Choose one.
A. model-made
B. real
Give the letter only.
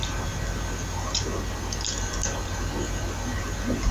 B